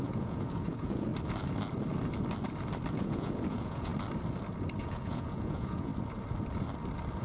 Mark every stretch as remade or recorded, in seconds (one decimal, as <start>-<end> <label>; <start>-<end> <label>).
0.0-1.1 remade; 1.1-2.9 recorded; 2.9-3.9 remade; 3.9-4.8 recorded; 4.8-5.9 remade; 5.9-7.2 recorded